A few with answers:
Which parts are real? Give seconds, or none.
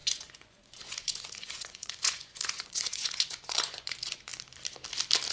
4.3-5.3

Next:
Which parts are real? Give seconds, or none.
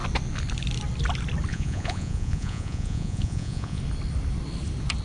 0.0-1.5; 3.8-5.0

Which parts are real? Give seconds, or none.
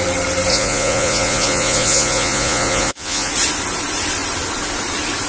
0.0-0.5; 3.3-5.3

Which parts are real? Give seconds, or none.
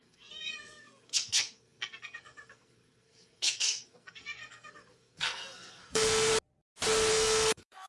6.3-7.1